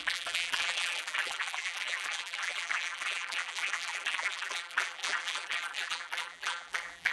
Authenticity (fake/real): fake